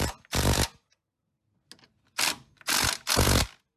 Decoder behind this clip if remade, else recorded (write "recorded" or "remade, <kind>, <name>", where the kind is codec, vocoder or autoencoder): recorded